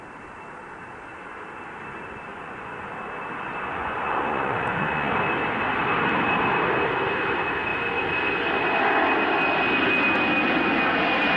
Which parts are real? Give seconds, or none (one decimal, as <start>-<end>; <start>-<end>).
0.0-2.3; 2.9-3.7; 5.1-11.4